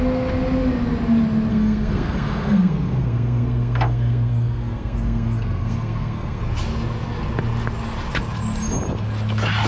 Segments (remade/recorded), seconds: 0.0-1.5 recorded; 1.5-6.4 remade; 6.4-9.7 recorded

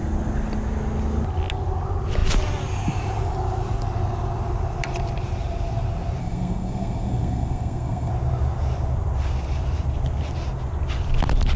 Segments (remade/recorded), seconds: 0.0-6.2 recorded; 6.2-8.1 remade; 8.1-11.6 recorded

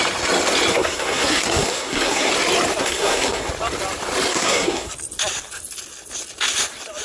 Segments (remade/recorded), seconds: 0.0-0.7 recorded; 0.7-2.3 remade; 2.3-2.8 recorded; 2.8-3.5 remade; 3.5-4.3 recorded; 4.3-4.9 remade; 4.9-7.0 recorded

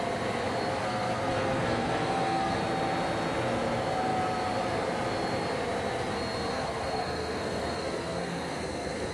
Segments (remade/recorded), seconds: 0.0-0.8 recorded; 0.8-2.6 remade; 2.6-6.5 recorded; 6.5-9.1 remade

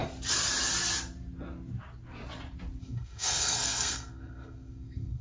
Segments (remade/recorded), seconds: 0.0-2.8 recorded; 2.8-5.2 remade

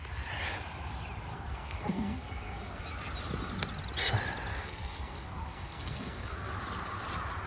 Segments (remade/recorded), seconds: 0.0-1.3 recorded; 1.3-2.8 remade; 2.8-4.5 recorded; 4.5-6.5 remade; 6.5-7.5 recorded

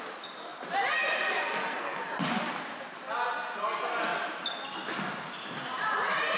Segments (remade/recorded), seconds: 0.0-1.5 recorded; 1.5-2.0 remade; 2.0-6.4 recorded